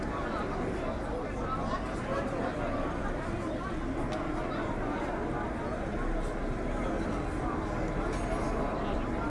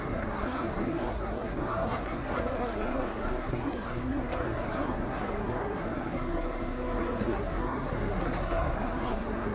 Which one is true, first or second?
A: first